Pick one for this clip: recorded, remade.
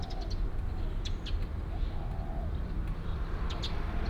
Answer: recorded